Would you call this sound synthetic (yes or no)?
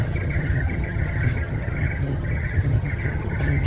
yes